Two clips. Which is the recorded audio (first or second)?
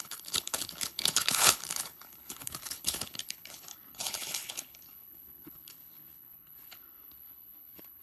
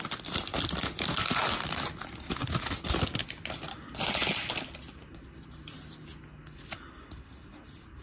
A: second